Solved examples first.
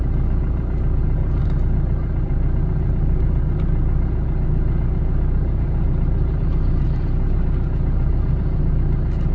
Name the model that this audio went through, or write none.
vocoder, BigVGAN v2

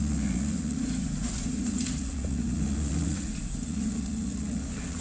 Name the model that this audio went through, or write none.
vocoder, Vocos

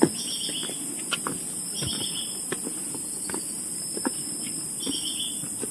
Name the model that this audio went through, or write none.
none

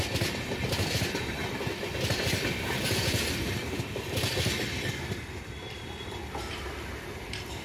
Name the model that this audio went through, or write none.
vocoder, BigVGAN v2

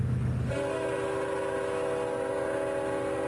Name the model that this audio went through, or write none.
none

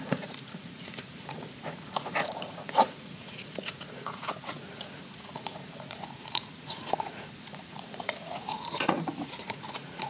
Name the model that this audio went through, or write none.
vocoder, Vocos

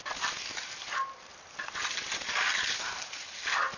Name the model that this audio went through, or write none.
none